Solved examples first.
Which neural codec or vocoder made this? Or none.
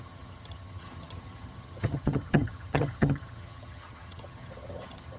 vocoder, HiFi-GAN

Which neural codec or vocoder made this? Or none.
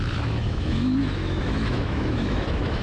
autoencoder, DAC-VAE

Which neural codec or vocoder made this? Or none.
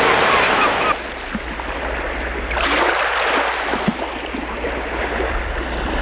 none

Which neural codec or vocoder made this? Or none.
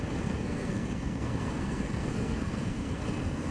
codec, SNAC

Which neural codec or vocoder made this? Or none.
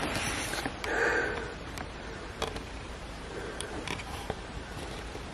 vocoder, BigVGAN v2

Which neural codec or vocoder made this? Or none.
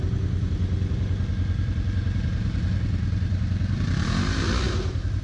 none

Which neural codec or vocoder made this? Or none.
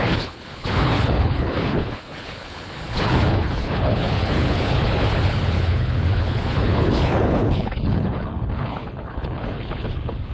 codec, HILCodec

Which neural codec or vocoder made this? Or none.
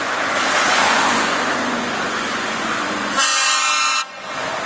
vocoder, Vocos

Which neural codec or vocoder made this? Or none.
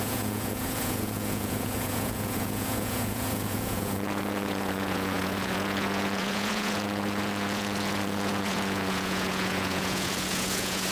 vocoder, Vocos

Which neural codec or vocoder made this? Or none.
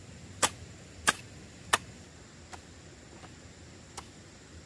none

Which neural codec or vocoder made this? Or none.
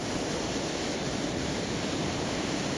none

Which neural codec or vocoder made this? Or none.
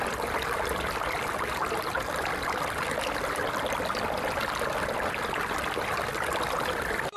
none